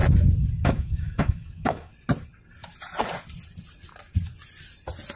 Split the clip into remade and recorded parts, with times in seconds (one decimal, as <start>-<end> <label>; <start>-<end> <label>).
0.0-0.5 recorded; 0.5-1.9 remade; 1.9-5.2 recorded